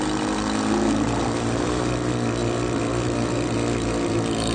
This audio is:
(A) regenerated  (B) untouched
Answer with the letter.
B